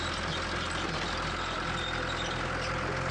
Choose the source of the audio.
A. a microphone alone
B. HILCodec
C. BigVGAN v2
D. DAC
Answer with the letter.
A